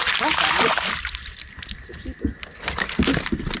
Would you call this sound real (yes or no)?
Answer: yes